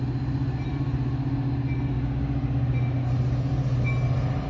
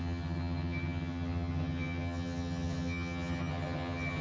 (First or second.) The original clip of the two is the first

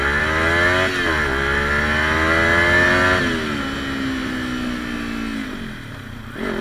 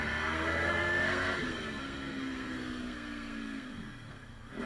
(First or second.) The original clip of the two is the first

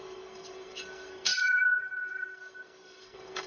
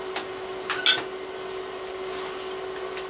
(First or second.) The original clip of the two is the second